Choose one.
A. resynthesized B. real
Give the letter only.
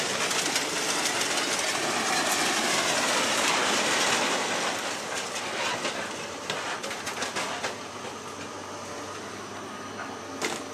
B